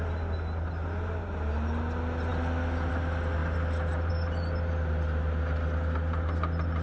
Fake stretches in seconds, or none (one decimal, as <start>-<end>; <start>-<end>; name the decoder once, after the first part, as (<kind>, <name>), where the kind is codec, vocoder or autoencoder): none